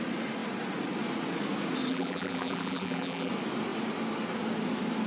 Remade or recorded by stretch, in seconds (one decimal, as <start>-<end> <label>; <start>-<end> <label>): 0.0-1.9 recorded; 1.9-3.3 remade; 3.3-5.1 recorded